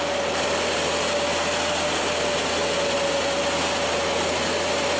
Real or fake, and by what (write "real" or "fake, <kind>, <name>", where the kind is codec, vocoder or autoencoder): real